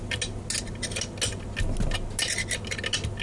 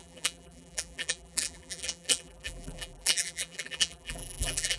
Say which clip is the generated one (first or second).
second